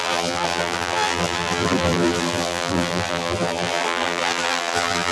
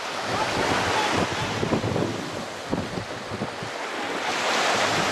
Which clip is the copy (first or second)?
first